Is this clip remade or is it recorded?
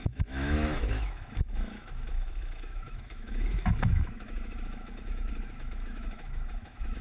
remade